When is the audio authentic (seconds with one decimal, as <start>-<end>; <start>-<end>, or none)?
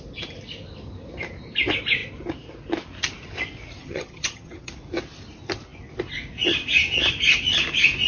0.0-3.8; 4.7-8.1